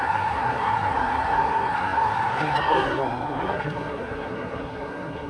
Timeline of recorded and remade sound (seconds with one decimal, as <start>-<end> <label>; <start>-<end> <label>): 0.0-5.3 remade